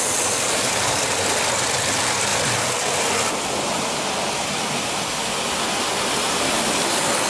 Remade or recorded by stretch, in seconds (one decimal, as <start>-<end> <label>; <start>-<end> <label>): 0.0-7.3 recorded